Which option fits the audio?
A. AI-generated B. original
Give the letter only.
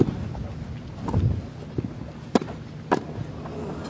B